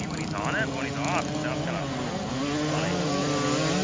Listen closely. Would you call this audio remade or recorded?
recorded